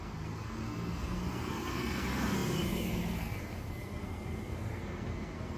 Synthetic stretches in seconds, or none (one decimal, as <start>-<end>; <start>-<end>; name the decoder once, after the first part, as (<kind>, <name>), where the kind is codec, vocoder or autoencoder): 0.0-5.6 (codec, SNAC)